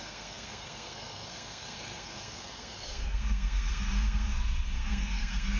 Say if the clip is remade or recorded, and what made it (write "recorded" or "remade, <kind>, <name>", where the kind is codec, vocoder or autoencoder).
remade, codec, SNAC